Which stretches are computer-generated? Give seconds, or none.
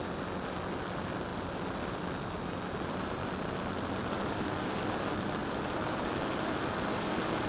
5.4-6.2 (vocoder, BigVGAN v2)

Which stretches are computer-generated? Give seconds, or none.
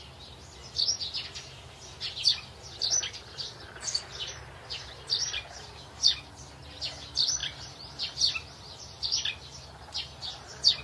7.4-8.6 (vocoder, BigVGAN v2)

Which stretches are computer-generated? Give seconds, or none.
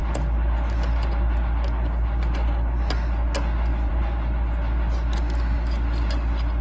none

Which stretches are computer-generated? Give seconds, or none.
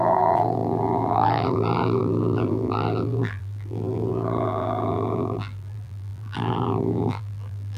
0.0-7.8 (vocoder, BigVGAN v2)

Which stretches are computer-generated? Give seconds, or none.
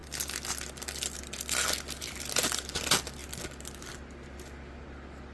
none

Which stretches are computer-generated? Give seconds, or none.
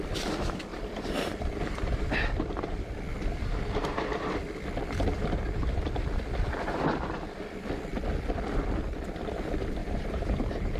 0.7-2.9 (vocoder, BigVGAN v2); 9.8-10.8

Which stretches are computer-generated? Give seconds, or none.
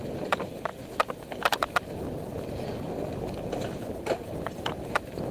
0.0-0.7 (vocoder, BigVGAN v2); 3.9-5.3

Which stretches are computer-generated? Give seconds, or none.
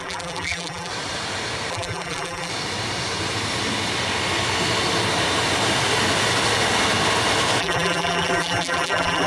0.0-0.9 (vocoder, BigVGAN v2); 1.7-2.5; 7.6-9.3